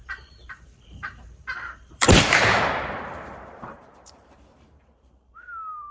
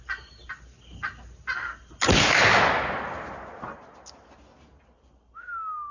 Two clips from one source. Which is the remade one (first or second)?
first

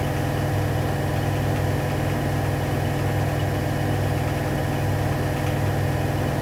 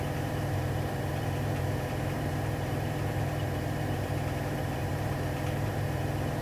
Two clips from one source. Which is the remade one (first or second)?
second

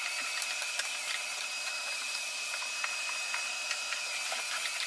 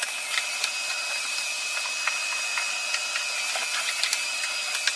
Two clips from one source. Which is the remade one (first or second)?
first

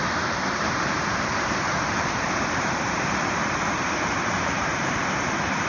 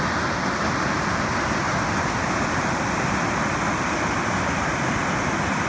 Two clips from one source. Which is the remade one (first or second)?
first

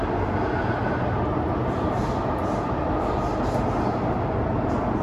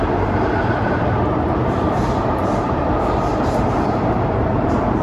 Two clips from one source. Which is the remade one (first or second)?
second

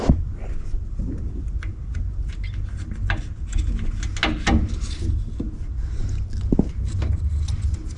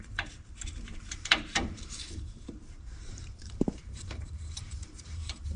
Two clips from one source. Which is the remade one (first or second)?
second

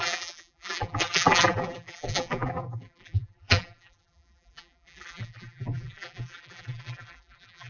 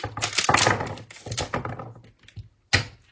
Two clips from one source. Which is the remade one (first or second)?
first